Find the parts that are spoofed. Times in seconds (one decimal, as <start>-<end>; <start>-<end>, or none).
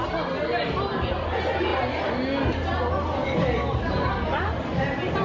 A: none